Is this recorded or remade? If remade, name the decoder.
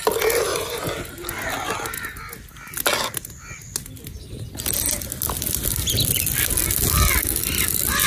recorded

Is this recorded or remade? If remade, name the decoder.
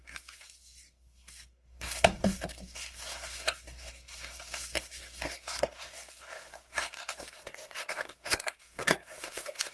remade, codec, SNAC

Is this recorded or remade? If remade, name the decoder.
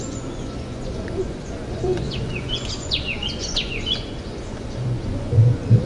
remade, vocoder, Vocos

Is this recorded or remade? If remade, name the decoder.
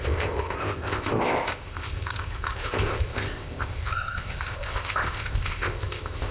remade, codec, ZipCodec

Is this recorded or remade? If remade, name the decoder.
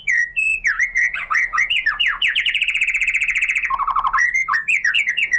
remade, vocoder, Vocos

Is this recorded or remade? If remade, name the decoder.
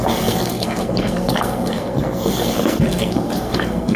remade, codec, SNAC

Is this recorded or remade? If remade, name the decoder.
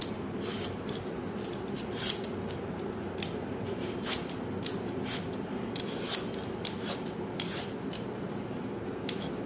recorded